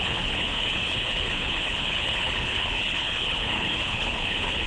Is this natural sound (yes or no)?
no